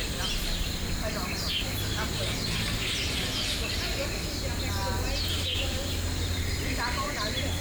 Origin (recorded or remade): recorded